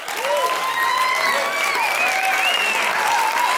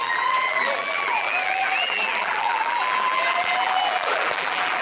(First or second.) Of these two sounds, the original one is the first